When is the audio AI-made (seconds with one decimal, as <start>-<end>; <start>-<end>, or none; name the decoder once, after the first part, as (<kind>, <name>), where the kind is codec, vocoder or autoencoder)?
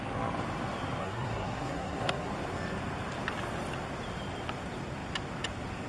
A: 1.0-2.3 (codec, SNAC)